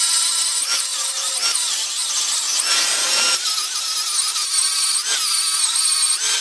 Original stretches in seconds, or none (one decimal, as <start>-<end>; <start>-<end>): 0.0-6.4